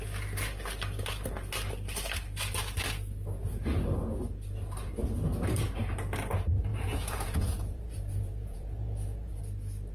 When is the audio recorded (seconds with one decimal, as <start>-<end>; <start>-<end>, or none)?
0.0-6.7; 9.4-9.9